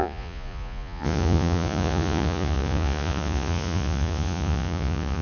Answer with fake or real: fake